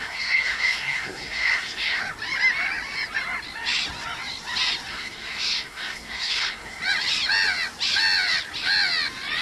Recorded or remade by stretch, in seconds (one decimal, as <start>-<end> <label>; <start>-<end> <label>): 0.0-2.0 remade; 2.0-4.9 recorded; 4.9-6.8 remade; 6.8-9.4 recorded